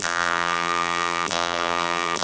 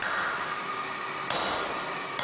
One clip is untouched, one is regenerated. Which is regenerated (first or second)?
first